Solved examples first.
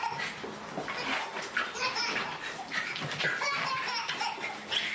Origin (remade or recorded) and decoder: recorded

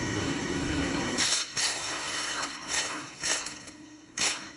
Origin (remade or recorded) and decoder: remade, codec, SNAC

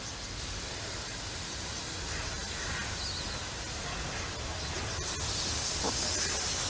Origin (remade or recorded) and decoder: recorded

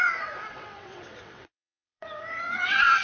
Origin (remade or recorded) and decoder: remade, vocoder, WaveNeXt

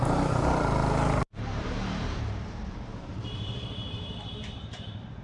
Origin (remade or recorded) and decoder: remade, vocoder, BigVGAN v2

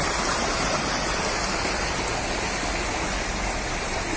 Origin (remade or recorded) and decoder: recorded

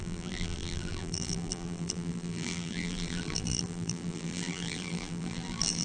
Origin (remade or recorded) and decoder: remade, vocoder, BigVGAN v2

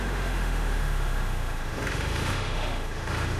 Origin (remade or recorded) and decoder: remade, autoencoder, DAC-VAE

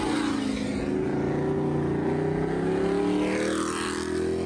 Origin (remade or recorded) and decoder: recorded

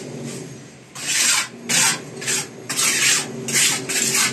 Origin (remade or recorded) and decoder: recorded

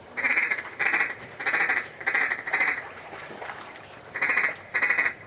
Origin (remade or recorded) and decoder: remade, vocoder, BigVGAN v2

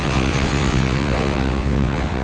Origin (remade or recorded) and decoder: remade, vocoder, WaveNeXt